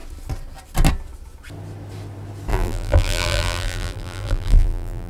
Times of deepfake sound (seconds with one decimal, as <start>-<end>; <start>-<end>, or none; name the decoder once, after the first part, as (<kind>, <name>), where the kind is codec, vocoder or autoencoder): 2.5-5.1 (vocoder, BigVGAN v2)